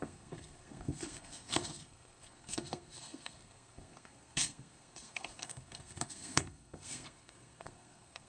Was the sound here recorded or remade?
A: remade